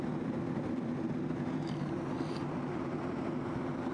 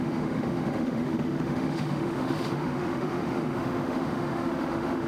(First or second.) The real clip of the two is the first